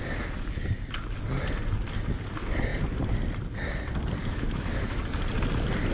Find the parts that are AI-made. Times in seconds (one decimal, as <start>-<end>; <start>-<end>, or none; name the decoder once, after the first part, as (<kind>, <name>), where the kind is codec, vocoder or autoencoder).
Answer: 4.2-5.0 (autoencoder, DAC-VAE)